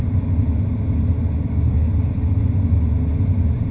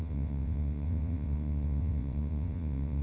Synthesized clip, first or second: second